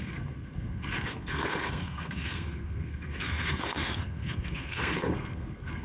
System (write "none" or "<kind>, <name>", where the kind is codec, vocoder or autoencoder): codec, SNAC